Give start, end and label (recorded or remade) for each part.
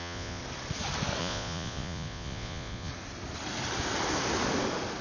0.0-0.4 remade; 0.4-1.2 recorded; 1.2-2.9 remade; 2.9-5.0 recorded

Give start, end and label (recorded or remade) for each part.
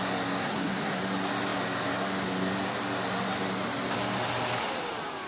0.0-0.4 recorded; 0.4-1.0 remade; 1.0-5.3 recorded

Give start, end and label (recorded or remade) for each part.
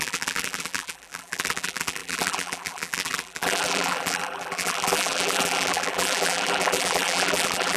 0.0-7.8 remade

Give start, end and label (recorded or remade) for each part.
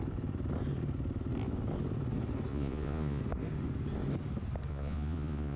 0.0-2.5 recorded; 2.5-3.2 remade; 3.2-4.7 recorded; 4.7-5.6 remade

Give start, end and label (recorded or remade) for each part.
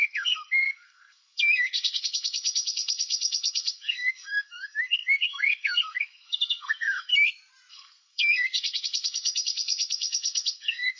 0.0-7.1 remade; 7.1-7.7 recorded; 7.7-11.0 remade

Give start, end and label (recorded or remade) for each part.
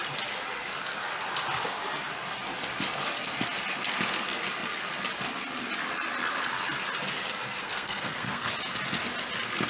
0.0-7.6 recorded; 7.6-8.5 remade; 8.5-9.7 recorded